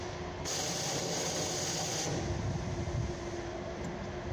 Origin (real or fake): real